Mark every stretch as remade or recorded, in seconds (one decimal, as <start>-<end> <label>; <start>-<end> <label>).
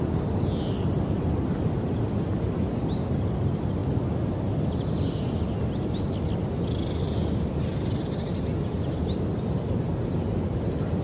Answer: 0.0-11.0 recorded